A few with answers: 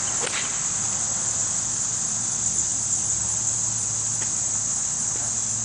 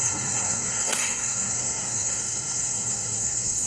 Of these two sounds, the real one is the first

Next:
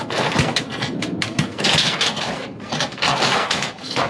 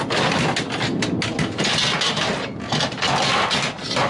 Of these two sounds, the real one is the second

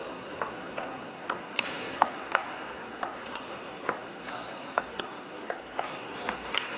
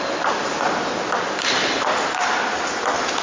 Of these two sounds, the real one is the second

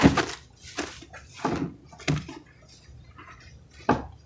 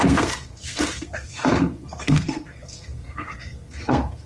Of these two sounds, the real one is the first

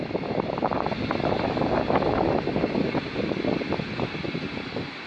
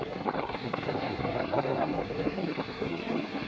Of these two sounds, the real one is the first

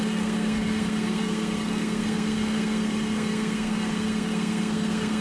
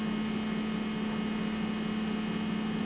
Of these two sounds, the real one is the second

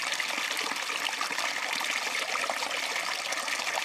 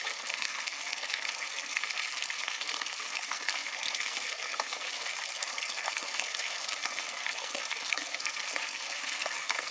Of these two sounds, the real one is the first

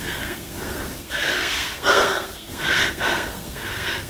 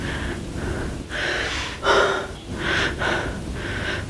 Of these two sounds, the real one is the second